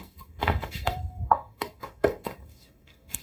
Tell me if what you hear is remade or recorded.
remade